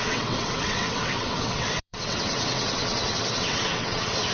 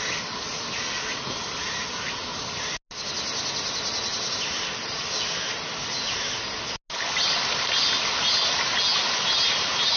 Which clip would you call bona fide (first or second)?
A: second